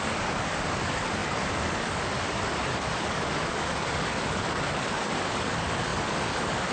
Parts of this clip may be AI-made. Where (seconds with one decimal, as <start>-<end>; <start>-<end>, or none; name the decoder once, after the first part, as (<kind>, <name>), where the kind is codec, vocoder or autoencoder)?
0.0-6.7 (codec, DAC)